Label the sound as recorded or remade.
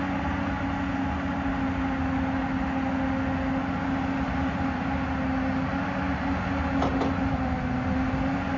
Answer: recorded